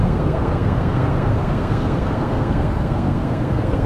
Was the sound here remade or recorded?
remade